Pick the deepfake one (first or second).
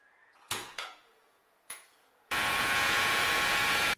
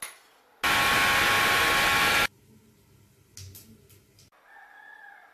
first